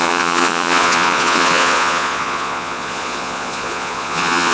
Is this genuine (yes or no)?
no